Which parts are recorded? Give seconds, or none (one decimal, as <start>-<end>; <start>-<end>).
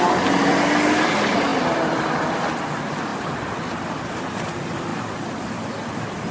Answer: 0.0-1.5; 2.5-3.1; 4.1-4.9; 5.5-6.3